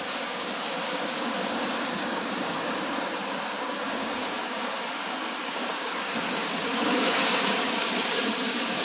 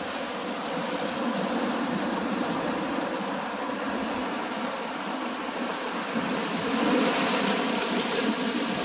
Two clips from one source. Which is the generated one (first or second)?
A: first